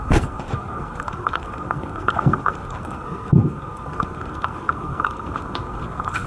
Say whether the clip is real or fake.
fake